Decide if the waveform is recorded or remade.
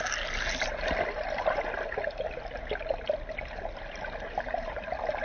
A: recorded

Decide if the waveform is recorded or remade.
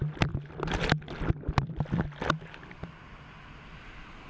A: recorded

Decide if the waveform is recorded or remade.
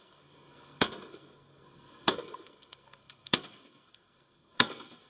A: remade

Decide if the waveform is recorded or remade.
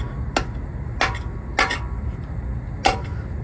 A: recorded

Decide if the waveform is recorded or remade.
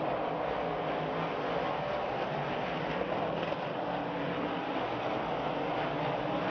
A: recorded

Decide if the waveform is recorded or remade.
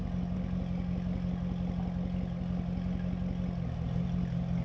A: recorded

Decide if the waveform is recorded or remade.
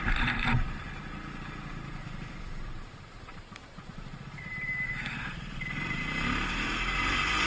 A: remade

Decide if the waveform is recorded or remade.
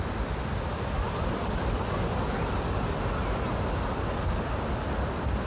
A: recorded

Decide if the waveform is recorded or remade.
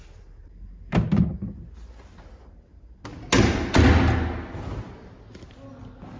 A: recorded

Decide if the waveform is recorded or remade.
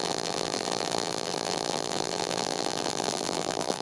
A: remade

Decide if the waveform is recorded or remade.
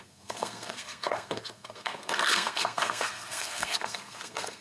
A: remade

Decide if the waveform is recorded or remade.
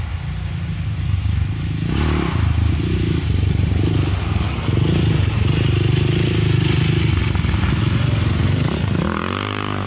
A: recorded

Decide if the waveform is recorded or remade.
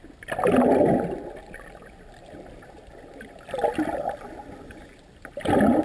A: recorded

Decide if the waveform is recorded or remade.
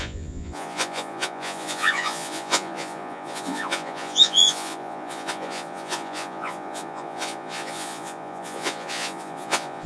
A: remade